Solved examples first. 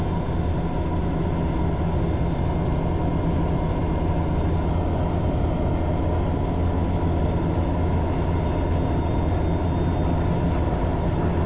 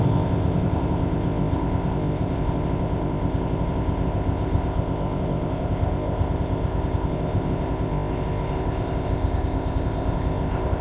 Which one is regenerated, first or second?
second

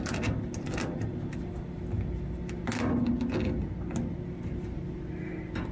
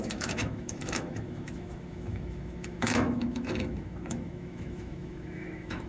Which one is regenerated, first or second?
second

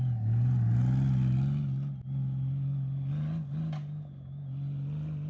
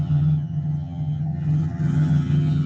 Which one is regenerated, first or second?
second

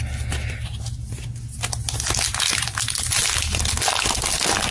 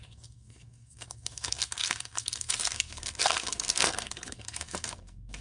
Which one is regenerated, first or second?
second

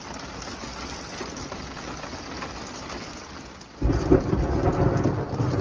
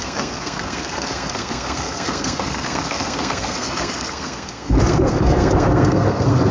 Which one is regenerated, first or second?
second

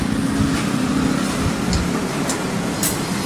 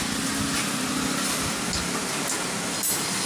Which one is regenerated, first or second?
first